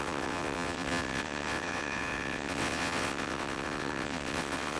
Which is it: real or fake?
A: fake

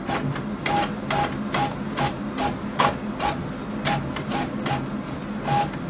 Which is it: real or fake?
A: real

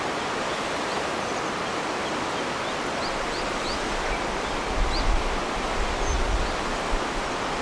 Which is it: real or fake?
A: real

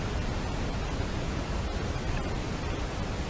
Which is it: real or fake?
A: real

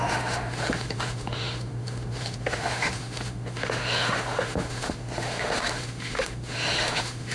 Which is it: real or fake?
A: fake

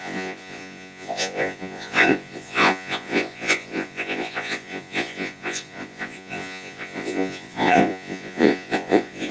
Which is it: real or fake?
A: fake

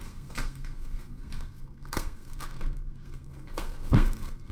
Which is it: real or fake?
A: fake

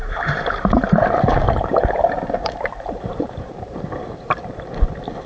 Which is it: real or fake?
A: fake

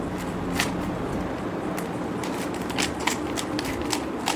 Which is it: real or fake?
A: real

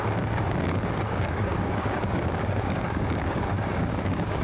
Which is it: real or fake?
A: fake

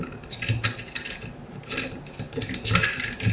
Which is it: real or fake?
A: real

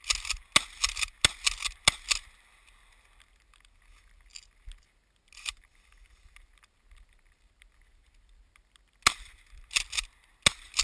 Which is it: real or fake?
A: real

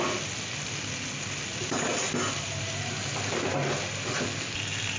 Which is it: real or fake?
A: real